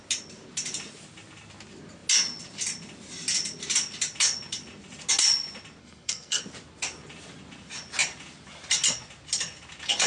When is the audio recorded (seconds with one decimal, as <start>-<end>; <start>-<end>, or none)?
0.0-5.8; 6.4-10.1